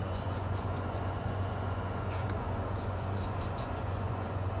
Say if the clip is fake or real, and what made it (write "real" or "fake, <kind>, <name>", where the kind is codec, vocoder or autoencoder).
fake, vocoder, Vocos